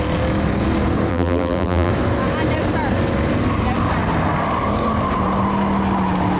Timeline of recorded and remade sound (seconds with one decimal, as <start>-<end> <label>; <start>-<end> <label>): 0.0-1.1 recorded; 1.1-1.9 remade; 1.9-6.4 recorded